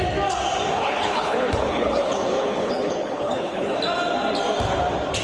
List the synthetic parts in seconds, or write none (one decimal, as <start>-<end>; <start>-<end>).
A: 0.7-3.8